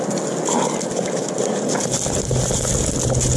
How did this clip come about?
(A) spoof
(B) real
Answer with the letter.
B